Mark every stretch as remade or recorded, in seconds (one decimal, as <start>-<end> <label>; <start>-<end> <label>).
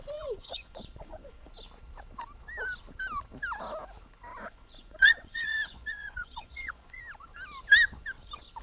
0.0-1.5 remade; 1.5-4.3 recorded; 4.3-7.0 remade; 7.0-8.6 recorded